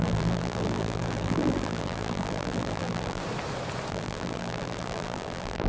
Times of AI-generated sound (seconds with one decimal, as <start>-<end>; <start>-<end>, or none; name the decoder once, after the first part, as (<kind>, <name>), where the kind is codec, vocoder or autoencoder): 0.0-3.2 (vocoder, BigVGAN v2); 3.9-5.7